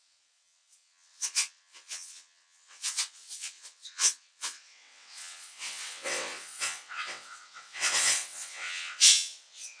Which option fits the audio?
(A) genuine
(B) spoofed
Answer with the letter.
B